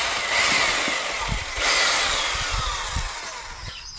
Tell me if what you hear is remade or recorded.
recorded